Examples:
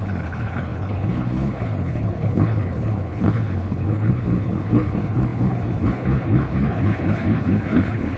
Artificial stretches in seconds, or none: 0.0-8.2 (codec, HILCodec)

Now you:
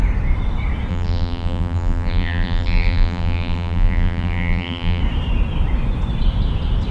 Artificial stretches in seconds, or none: 0.9-5.0 (vocoder, BigVGAN v2)

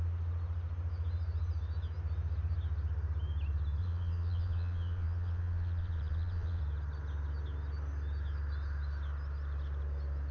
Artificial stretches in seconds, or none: 3.8-6.6 (vocoder, Vocos)

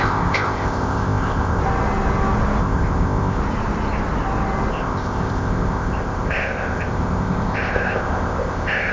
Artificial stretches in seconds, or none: 0.0-1.6 (codec, ZipCodec); 2.6-3.4; 4.7-8.9

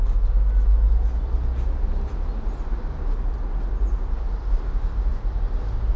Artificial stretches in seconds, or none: none

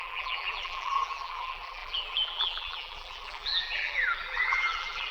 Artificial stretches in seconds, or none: 0.0-5.1 (vocoder, BigVGAN v2)

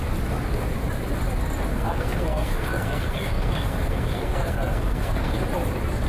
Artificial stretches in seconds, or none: 1.7-5.4 (codec, SNAC)

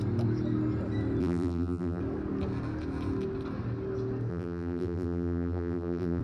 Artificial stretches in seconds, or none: 1.2-2.0 (vocoder, BigVGAN v2); 4.3-6.2